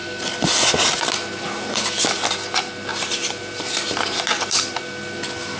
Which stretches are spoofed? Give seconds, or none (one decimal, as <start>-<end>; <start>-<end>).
2.9-4.8